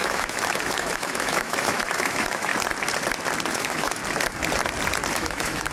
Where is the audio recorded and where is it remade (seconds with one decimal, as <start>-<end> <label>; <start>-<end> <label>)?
0.0-2.5 remade; 2.5-3.5 recorded; 3.5-4.0 remade; 4.0-5.1 recorded; 5.1-5.7 remade